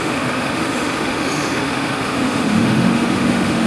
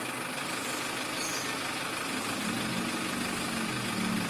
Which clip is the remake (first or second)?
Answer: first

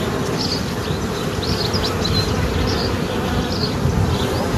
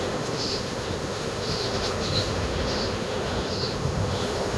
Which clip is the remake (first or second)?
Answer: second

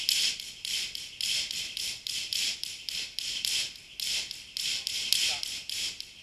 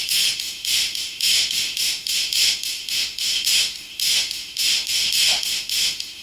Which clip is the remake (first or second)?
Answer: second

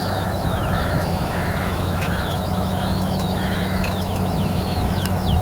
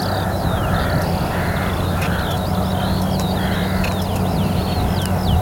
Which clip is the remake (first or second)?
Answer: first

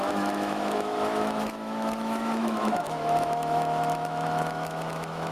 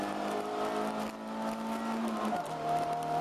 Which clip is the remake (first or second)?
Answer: first